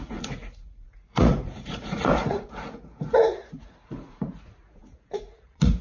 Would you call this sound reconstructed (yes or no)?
yes